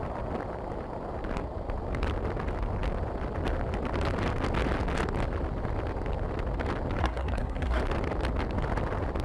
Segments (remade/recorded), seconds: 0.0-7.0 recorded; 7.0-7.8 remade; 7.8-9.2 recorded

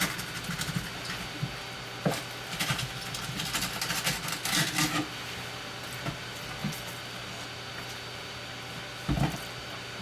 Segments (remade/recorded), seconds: 0.0-10.0 recorded